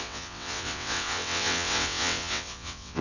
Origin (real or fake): fake